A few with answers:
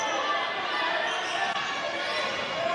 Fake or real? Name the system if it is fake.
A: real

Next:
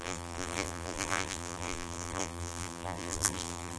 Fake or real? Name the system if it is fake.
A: fake, vocoder, BigVGAN v2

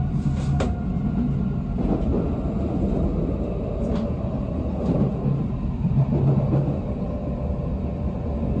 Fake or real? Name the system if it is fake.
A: real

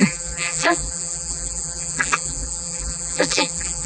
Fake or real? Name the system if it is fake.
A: fake, vocoder, BigVGAN v2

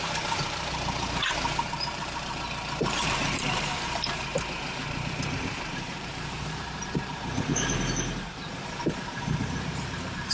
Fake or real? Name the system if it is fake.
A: fake, vocoder, BigVGAN v2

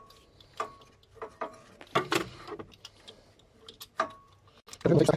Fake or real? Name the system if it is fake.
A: real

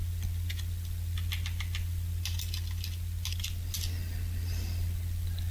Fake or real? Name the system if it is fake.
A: real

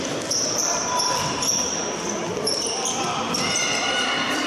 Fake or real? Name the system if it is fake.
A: fake, vocoder, BigVGAN v2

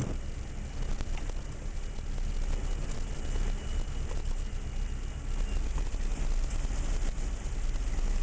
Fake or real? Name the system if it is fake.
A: real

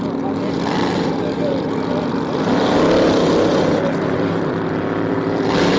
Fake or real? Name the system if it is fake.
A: fake, vocoder, BigVGAN v2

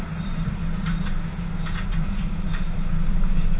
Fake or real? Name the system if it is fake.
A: real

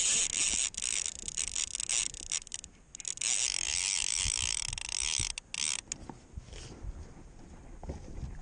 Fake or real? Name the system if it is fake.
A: real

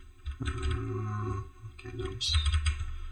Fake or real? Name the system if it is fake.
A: real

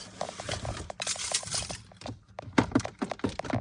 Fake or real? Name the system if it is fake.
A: fake, vocoder, BigVGAN v2